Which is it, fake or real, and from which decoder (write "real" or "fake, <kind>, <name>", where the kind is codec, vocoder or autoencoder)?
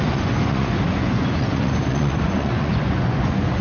fake, vocoder, Vocos